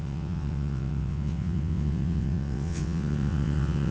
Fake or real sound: fake